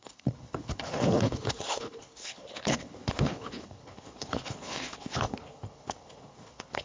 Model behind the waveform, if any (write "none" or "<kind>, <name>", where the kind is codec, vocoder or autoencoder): codec, HILCodec